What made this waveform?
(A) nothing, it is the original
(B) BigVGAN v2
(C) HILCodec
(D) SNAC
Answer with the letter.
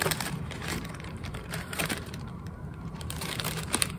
B